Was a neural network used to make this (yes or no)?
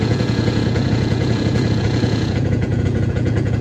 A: yes